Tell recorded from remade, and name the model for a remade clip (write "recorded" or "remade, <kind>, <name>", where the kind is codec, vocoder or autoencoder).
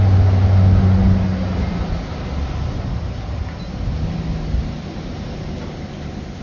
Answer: recorded